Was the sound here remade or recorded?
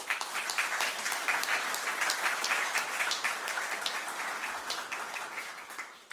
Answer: recorded